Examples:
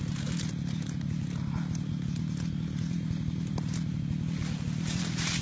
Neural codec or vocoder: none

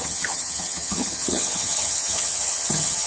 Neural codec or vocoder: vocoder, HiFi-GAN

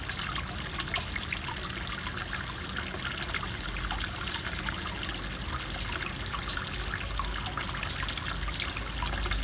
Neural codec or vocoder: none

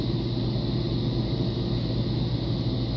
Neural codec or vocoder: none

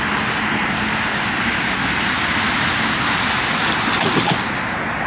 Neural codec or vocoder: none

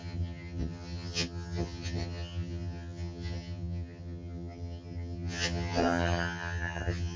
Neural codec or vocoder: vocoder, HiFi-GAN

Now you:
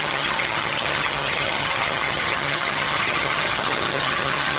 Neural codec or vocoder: vocoder, HiFi-GAN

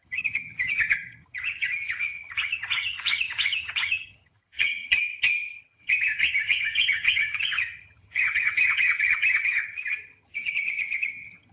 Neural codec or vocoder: vocoder, HiFi-GAN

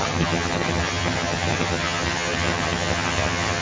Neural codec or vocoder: vocoder, HiFi-GAN